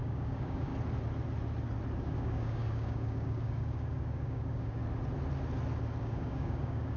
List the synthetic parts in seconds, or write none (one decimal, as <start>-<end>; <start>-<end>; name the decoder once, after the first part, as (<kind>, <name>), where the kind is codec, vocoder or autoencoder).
0.0-0.7 (codec, DAC); 2.0-4.8; 6.0-7.0